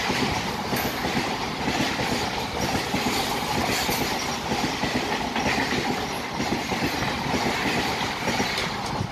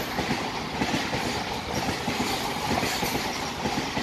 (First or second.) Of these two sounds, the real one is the first